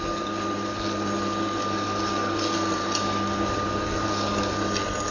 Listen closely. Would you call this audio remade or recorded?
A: recorded